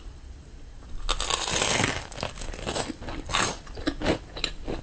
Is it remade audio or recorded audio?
recorded